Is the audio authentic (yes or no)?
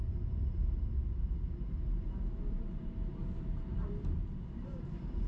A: no